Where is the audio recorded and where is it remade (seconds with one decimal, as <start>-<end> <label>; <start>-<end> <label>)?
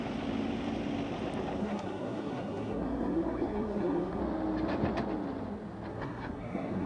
0.0-1.6 recorded; 1.6-4.2 remade; 4.2-5.9 recorded; 5.9-6.9 remade